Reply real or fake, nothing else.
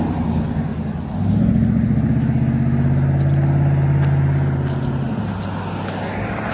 real